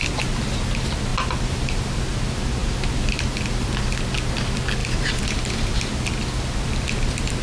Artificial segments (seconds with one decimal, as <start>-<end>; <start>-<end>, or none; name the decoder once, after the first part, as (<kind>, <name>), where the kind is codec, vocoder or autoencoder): 1.1-2.0 (vocoder, BigVGAN v2); 4.8-5.8